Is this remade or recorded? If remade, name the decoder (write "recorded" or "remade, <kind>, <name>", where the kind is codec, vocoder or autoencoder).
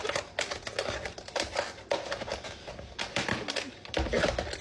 recorded